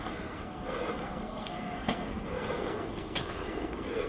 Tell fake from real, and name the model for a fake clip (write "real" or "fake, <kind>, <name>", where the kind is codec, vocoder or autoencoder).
fake, codec, SNAC